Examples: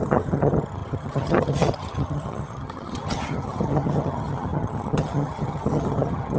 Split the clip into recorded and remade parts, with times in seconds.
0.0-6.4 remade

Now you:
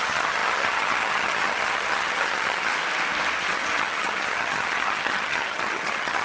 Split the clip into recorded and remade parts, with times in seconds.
0.0-2.7 remade; 2.7-3.4 recorded; 3.4-6.2 remade